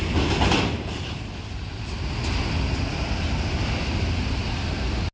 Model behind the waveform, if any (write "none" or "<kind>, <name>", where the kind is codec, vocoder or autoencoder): none